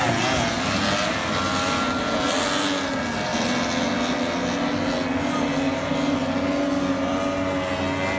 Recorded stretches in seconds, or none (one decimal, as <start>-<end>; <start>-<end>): 0.0-8.2